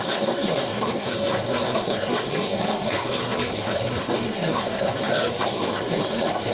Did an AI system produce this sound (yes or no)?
yes